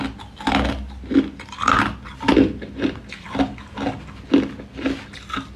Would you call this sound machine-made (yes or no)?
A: no